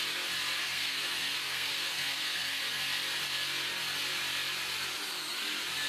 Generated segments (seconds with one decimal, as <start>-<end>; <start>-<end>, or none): 0.6-2.6